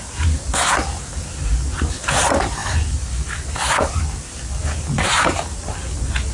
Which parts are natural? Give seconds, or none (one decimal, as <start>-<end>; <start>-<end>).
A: 0.0-6.3